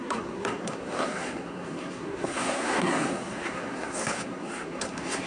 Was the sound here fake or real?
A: fake